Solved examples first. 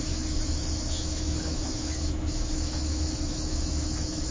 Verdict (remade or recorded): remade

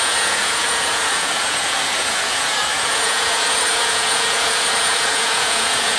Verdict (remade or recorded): remade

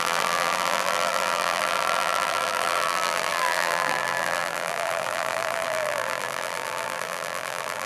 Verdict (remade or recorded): remade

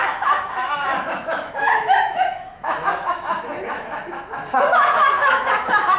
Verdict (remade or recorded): remade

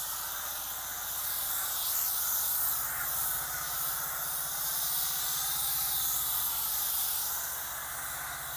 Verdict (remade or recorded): recorded